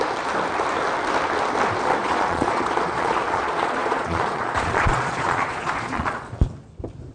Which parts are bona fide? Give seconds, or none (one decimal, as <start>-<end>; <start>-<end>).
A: 0.0-2.0; 6.3-7.1